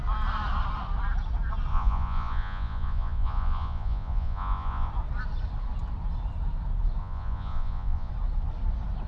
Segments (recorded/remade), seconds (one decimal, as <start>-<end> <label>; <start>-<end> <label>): 0.0-1.7 recorded; 1.7-4.9 remade; 4.9-7.0 recorded; 7.0-8.1 remade; 8.1-9.1 recorded

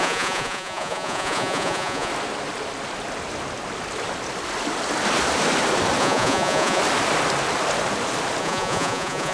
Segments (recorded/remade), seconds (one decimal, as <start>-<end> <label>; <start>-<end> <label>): 0.0-2.1 remade; 2.1-6.0 recorded; 6.0-6.8 remade; 6.8-8.4 recorded; 8.4-9.3 remade